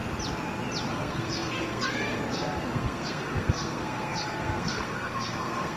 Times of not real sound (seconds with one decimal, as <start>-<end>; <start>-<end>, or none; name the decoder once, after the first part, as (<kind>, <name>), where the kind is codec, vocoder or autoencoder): 0.9-5.8 (codec, SNAC)